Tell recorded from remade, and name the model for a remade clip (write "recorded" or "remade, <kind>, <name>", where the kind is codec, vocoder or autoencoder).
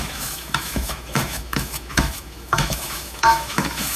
remade, autoencoder, DAC-VAE